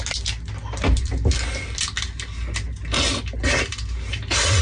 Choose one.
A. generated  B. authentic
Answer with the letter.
B